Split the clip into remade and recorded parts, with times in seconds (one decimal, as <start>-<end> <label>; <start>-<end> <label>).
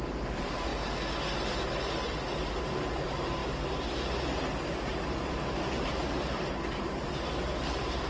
0.0-0.7 remade; 0.7-2.6 recorded; 2.6-3.4 remade; 3.4-4.8 recorded; 4.8-8.1 remade